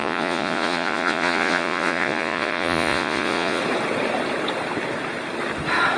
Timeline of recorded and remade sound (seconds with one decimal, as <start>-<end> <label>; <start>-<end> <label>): 0.0-3.6 remade; 3.6-6.0 recorded